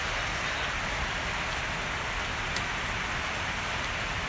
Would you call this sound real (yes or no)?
yes